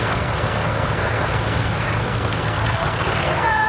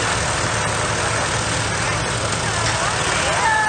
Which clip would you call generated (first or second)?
first